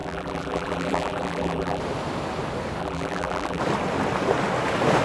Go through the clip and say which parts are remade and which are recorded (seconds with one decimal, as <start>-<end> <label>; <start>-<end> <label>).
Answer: 0.0-1.8 remade; 1.8-2.8 recorded; 2.8-3.6 remade; 3.6-5.0 recorded